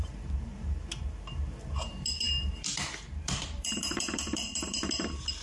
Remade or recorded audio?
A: remade